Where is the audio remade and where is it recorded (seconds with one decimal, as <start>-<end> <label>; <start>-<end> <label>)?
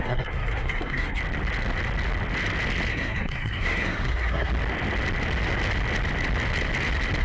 0.0-1.2 remade; 1.2-2.9 recorded; 2.9-4.5 remade; 4.5-7.2 recorded